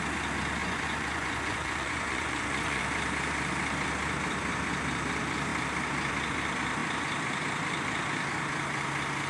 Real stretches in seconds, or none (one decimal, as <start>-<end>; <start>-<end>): 0.0-0.6; 2.8-9.3